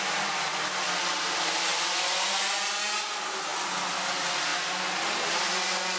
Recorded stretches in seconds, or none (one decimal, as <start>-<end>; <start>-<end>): 0.0-6.0